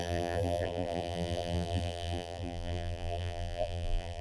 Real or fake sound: fake